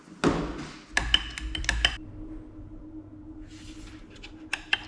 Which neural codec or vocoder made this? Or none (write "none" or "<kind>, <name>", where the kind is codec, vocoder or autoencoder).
none